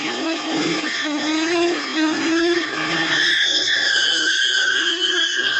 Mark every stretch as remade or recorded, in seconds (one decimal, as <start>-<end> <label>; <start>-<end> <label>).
0.0-5.6 remade